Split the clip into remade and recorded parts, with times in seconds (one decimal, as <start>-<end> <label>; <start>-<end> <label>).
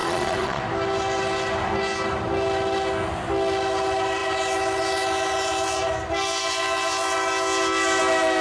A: 0.0-0.6 remade; 0.6-8.4 recorded